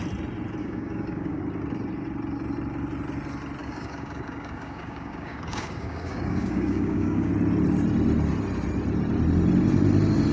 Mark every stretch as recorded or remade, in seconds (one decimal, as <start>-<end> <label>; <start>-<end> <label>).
0.0-0.6 recorded; 0.6-1.4 remade; 1.4-3.6 recorded; 3.6-7.3 remade; 7.3-10.3 recorded